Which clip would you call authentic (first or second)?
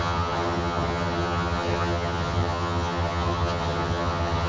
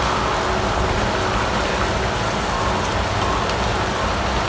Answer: second